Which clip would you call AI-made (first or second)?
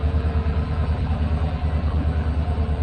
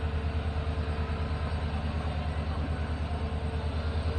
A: first